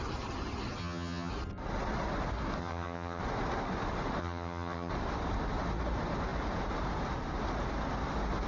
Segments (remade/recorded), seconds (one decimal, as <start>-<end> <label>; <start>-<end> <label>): 0.0-0.8 recorded; 0.8-1.3 remade; 1.3-2.6 recorded; 2.6-3.2 remade; 3.2-4.2 recorded; 4.2-4.9 remade; 4.9-8.5 recorded